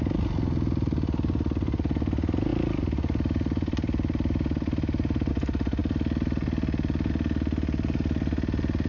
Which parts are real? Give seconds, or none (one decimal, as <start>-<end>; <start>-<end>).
0.0-2.5; 5.3-8.9